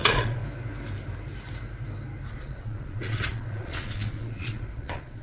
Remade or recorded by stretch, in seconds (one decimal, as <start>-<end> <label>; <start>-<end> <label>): 0.0-0.4 remade; 0.4-2.3 recorded; 2.3-5.2 remade